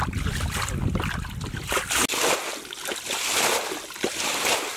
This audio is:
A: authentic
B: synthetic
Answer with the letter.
A